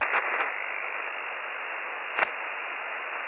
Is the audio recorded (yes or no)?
yes